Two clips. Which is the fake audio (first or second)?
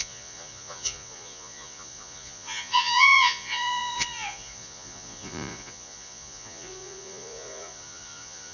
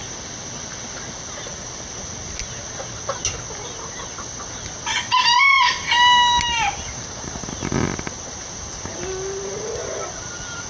first